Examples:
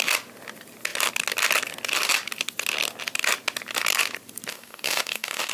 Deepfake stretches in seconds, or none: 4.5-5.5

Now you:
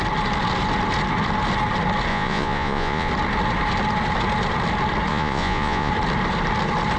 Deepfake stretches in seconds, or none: 2.1-3.1; 5.1-5.9

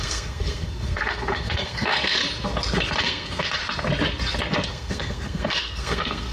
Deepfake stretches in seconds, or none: 0.0-2.2; 3.0-3.6; 4.7-6.3